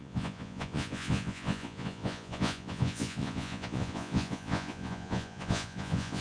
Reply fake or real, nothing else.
fake